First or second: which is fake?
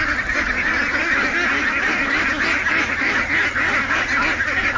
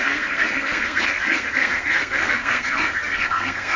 second